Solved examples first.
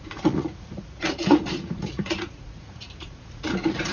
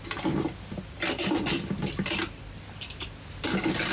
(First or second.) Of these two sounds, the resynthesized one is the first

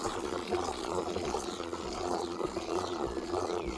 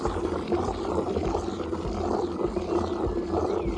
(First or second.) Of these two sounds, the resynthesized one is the first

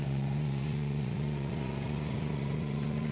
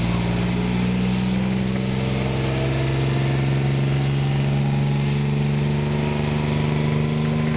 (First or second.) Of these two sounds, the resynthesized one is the first